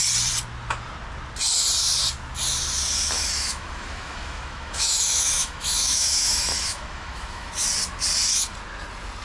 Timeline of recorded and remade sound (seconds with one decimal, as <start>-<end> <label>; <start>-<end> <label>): 0.0-3.2 recorded; 3.2-7.5 remade; 7.5-9.2 recorded